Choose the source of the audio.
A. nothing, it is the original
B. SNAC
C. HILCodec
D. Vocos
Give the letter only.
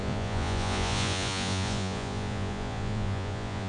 D